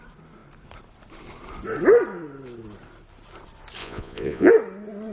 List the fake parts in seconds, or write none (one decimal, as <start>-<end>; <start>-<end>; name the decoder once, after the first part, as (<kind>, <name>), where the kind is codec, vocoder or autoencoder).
3.8-4.5 (vocoder, Vocos)